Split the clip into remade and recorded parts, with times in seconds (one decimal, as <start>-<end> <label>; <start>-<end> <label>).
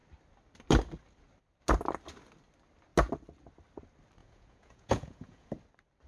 0.0-4.2 recorded; 4.2-5.5 remade; 5.5-6.1 recorded